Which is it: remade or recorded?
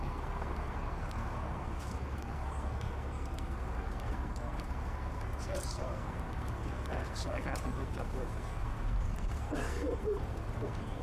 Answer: remade